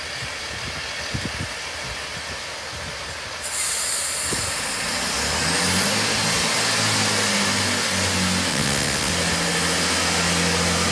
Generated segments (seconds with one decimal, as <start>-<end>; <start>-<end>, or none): 8.5-9.1